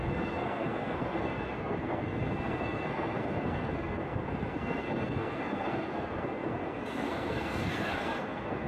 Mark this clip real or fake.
fake